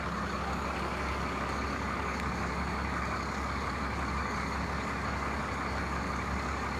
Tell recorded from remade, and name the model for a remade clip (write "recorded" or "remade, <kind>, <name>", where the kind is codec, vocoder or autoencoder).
remade, codec, DAC